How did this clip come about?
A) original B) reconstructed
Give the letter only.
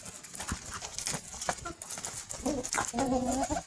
A